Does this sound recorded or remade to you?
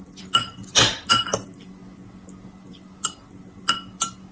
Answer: recorded